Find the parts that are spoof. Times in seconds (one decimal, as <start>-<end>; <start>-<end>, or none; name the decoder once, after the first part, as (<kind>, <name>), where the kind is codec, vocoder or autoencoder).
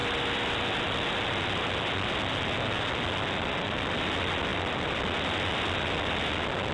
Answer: none